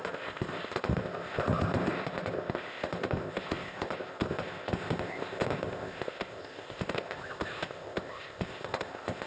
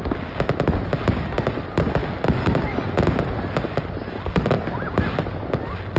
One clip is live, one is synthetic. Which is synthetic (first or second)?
first